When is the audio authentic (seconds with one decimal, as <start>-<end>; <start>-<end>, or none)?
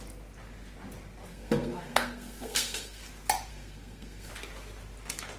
0.0-1.3; 3.0-3.5; 4.3-5.4